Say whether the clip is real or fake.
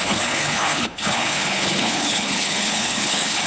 fake